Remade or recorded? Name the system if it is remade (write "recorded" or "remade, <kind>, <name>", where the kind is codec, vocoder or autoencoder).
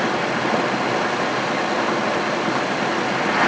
recorded